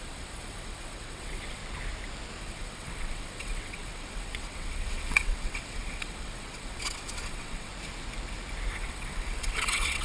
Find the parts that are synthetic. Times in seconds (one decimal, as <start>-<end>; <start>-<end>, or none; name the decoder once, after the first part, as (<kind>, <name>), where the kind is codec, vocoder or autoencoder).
0.0-1.6 (vocoder, WaveNeXt); 2.4-7.7; 8.7-10.0